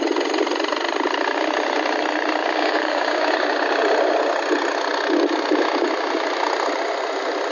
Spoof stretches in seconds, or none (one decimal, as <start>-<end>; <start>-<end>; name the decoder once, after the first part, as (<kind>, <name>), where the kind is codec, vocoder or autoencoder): 2.4-3.3 (codec, DAC)